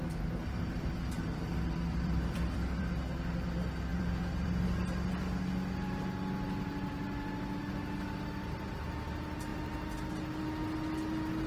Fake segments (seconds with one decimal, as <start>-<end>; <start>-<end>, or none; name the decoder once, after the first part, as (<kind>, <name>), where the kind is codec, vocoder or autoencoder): 0.7-2.9 (vocoder, BigVGAN v2); 3.9-4.5